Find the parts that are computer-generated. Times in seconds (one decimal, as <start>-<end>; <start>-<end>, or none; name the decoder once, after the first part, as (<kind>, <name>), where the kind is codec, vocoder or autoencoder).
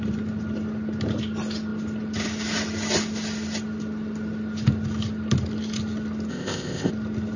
6.3-6.9 (codec, ZipCodec)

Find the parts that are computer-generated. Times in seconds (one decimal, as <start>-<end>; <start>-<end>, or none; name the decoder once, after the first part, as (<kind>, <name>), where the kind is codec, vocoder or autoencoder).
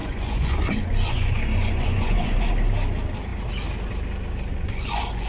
0.0-2.5 (vocoder, Vocos); 4.5-5.3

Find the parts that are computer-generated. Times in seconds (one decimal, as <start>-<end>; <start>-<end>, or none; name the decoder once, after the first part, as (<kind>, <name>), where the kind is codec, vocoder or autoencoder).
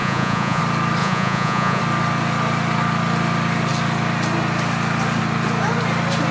0.0-0.6 (vocoder, Vocos); 1.0-1.8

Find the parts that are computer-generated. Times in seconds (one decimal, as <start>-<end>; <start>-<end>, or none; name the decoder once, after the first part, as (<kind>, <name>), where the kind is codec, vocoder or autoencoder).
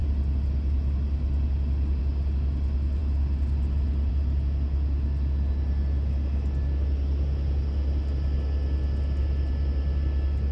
none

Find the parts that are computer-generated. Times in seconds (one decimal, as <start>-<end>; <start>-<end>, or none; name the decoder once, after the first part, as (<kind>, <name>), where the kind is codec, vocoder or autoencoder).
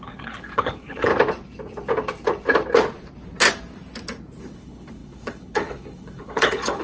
0.0-1.1 (codec, HILCodec); 4.4-6.8